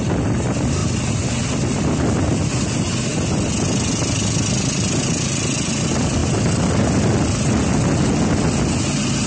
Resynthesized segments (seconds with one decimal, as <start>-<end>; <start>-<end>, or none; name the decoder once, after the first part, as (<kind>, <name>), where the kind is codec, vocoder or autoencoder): none